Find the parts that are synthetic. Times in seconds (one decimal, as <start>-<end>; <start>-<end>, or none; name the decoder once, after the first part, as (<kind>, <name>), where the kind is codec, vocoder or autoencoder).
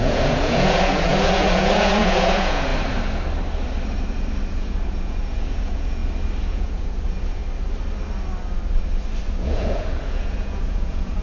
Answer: 0.0-2.7 (vocoder, Vocos); 4.5-6.0; 6.5-7.4; 9.3-11.2